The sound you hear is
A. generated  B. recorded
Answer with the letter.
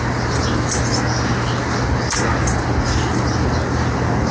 B